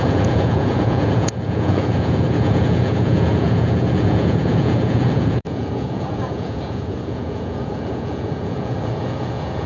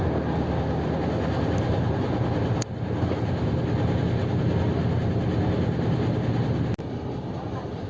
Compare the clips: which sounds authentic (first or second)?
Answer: second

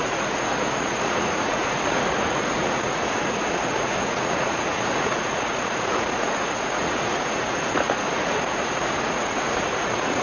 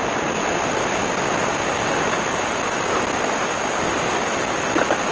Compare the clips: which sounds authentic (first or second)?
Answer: second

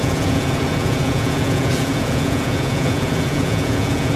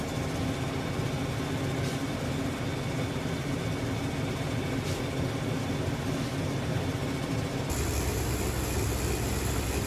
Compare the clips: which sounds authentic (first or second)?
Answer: second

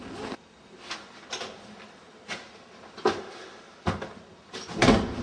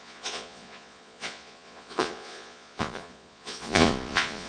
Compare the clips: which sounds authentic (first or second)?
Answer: first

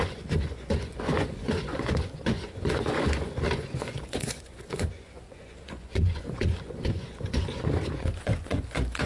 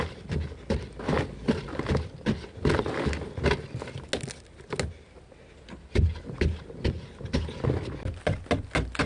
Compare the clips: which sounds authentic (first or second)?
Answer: second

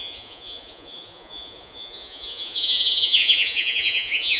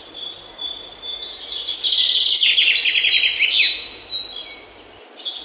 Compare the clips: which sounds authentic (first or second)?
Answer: second